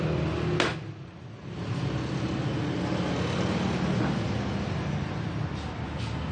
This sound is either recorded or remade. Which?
recorded